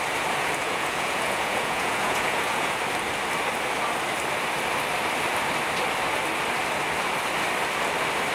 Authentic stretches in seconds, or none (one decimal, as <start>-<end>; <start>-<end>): 0.0-0.4; 2.8-8.3